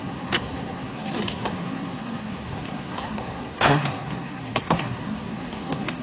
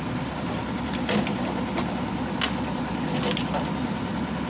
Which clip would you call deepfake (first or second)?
first